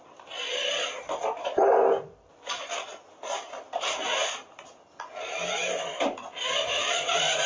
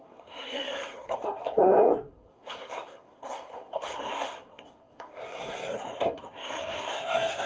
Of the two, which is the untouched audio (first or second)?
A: first